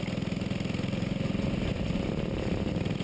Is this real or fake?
real